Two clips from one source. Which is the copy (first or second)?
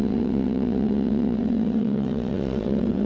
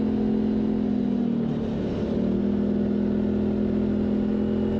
first